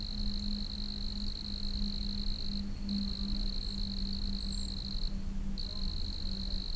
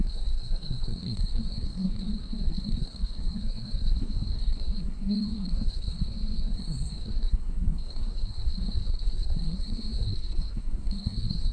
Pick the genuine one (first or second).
first